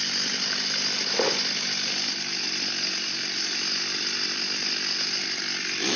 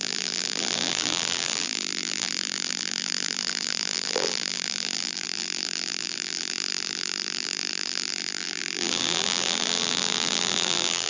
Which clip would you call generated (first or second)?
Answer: second